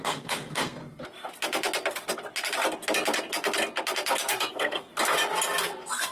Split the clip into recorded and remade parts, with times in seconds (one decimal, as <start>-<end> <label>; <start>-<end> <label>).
0.0-0.8 remade; 0.8-4.5 recorded; 4.5-4.9 remade; 4.9-5.6 recorded; 5.6-6.1 remade